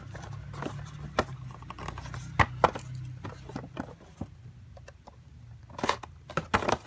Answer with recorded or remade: recorded